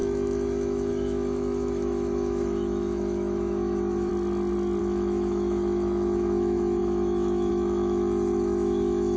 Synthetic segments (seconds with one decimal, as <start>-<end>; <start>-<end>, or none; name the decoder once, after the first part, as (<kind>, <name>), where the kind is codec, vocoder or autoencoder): 0.0-4.1 (autoencoder, DAC-VAE); 4.8-9.2

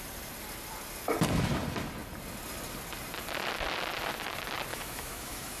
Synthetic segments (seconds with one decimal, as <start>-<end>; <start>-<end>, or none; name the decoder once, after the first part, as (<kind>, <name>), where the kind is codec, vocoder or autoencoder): 4.7-5.6 (autoencoder, DAC-VAE)

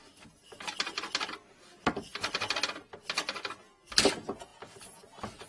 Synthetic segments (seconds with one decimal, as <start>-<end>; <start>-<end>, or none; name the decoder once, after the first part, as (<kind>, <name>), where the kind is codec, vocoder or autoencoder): none

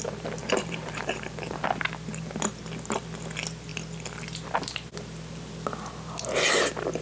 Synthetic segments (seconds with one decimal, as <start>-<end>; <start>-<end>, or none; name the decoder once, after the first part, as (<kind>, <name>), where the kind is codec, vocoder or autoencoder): 0.4-1.6 (vocoder, BigVGAN v2)

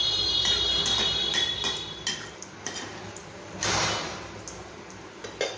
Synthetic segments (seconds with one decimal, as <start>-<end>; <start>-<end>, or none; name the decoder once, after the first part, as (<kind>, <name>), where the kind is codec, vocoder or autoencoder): none